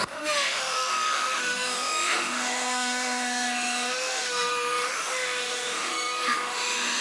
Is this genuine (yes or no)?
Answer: no